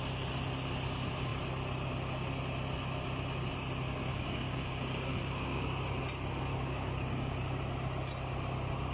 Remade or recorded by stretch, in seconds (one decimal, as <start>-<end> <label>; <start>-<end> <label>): 0.0-4.1 recorded; 4.1-6.0 remade; 6.0-6.5 recorded; 6.5-7.4 remade; 7.4-8.9 recorded